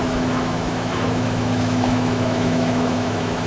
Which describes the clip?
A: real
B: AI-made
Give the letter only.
B